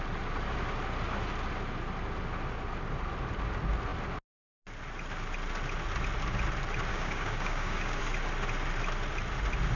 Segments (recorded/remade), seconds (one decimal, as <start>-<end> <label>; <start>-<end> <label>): 0.0-6.9 recorded; 6.9-8.0 remade; 8.0-9.8 recorded